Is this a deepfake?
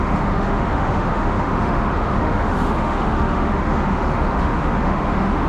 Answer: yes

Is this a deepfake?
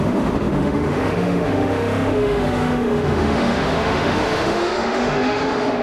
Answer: yes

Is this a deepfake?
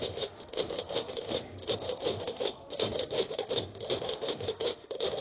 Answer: yes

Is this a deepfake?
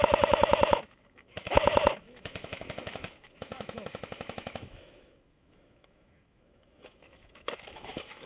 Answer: yes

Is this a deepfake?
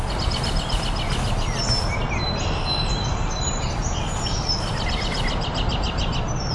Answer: no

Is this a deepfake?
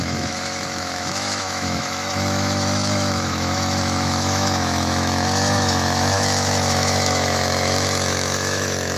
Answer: yes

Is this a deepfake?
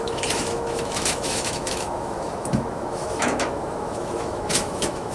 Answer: yes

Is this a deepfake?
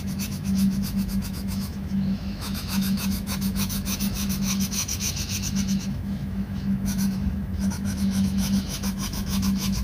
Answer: yes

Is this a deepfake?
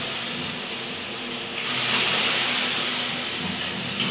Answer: no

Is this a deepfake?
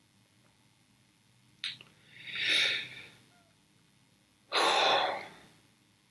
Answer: no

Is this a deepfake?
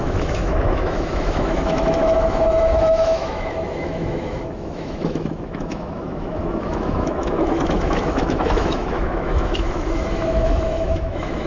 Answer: yes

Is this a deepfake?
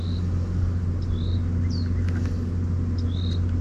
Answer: no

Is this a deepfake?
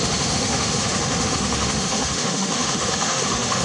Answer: yes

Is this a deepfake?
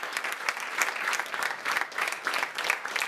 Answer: no